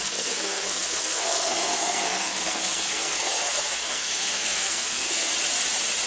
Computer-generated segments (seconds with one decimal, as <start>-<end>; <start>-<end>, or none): 0.0-5.3